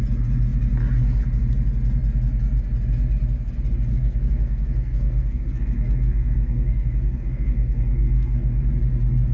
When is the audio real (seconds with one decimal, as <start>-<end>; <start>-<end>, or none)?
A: 0.0-3.9; 8.7-9.3